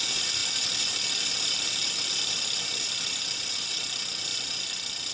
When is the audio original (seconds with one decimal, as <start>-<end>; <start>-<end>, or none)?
0.0-5.1

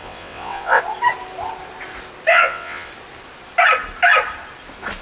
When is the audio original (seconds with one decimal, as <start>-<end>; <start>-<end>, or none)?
0.8-2.3; 2.9-5.0

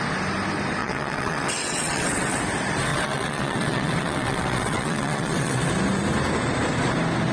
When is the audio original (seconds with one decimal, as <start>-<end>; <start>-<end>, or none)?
0.0-0.8; 2.4-2.9; 5.7-7.3

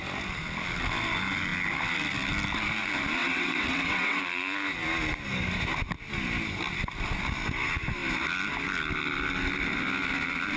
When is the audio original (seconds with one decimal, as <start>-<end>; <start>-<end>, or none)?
0.0-3.2; 4.2-10.6